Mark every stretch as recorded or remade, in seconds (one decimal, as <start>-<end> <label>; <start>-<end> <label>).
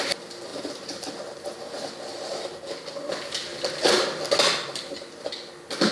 0.0-0.5 recorded; 0.5-1.8 remade; 1.8-5.9 recorded